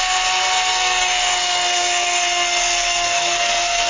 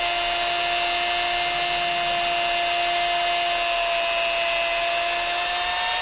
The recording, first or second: second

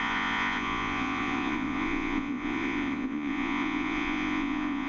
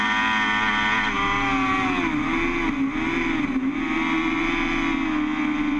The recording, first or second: second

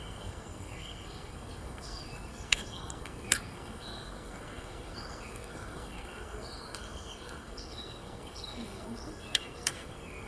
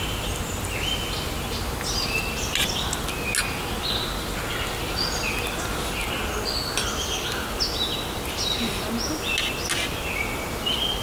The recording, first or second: second